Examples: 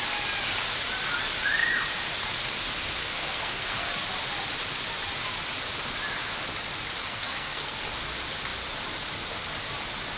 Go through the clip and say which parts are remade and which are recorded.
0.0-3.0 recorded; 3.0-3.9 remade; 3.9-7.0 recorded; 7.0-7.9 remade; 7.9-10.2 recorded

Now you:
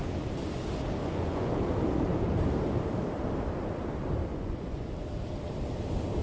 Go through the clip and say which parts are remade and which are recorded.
0.0-1.0 recorded; 1.0-1.5 remade; 1.5-4.3 recorded; 4.3-4.9 remade; 4.9-6.2 recorded

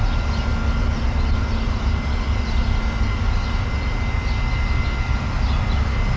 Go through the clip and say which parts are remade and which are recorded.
0.0-6.2 recorded

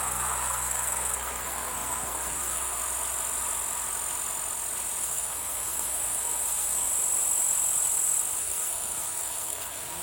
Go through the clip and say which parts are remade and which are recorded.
0.0-2.8 remade; 2.8-5.0 recorded; 5.0-6.9 remade; 6.9-8.4 recorded; 8.4-10.0 remade

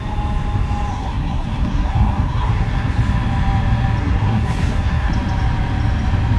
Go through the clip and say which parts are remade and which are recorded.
0.0-0.9 recorded; 0.9-3.0 remade; 3.0-4.0 recorded; 4.0-5.1 remade; 5.1-6.4 recorded

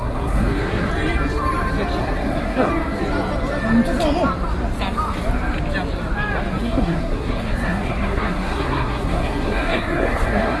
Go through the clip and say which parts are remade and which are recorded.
0.0-0.9 remade; 0.9-2.0 recorded; 2.0-2.7 remade; 2.7-6.6 recorded; 6.6-10.6 remade

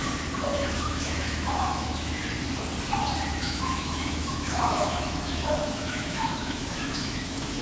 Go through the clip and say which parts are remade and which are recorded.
0.0-0.5 recorded; 0.5-2.2 remade; 2.2-3.3 recorded; 3.3-7.6 remade

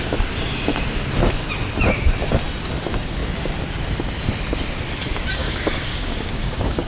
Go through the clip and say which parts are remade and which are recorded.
0.0-5.4 recorded; 5.4-6.9 remade